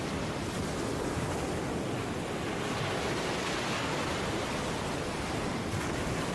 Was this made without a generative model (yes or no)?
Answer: yes